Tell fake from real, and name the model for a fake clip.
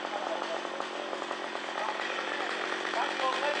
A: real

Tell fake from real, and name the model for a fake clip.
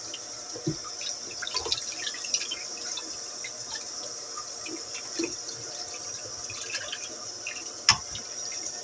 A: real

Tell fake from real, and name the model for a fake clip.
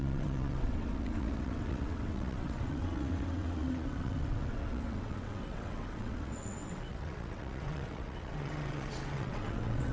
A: fake, vocoder, WaveNeXt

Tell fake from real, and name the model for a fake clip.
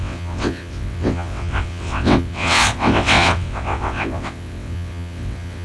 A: fake, vocoder, WaveNeXt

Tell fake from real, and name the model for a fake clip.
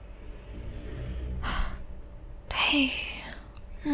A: real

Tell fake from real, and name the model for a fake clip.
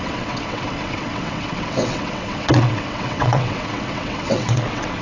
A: fake, vocoder, WaveNeXt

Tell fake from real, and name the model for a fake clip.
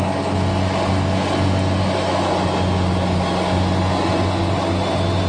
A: real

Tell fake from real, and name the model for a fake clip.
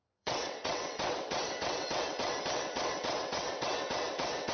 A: fake, vocoder, WaveNeXt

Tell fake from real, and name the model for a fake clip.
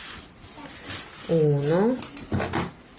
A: real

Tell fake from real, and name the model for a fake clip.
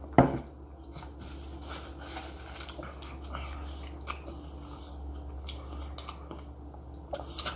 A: real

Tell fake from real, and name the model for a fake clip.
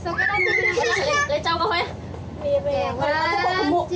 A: real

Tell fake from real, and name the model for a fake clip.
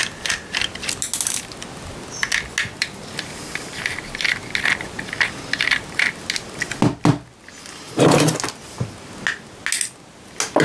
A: real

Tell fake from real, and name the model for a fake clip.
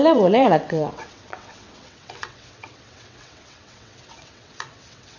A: fake, vocoder, WaveNeXt